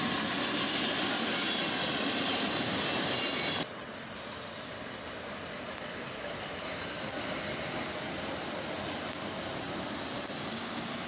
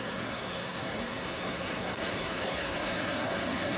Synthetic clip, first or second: second